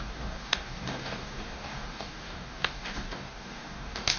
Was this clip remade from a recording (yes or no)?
yes